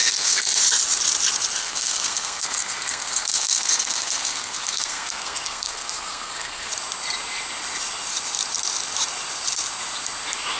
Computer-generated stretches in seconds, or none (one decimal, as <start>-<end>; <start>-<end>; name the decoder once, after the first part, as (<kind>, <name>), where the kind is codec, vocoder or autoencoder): 0.0-0.6 (codec, SNAC); 1.6-6.7